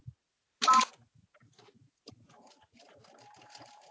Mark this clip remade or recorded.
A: recorded